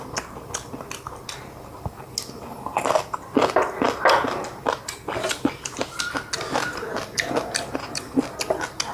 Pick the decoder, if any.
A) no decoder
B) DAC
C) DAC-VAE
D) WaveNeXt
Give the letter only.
A